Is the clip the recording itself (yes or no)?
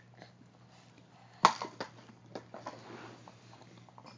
yes